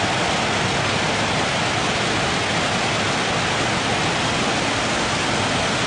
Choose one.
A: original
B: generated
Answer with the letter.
A